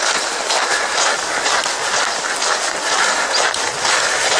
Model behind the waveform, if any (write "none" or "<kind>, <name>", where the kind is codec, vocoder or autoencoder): none